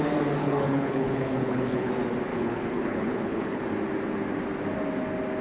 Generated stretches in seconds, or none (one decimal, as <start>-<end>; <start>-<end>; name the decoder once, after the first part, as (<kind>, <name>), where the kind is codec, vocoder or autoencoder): 0.4-1.9 (codec, HILCodec); 2.3-3.6